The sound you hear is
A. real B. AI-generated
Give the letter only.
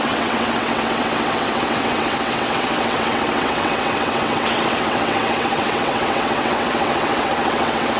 B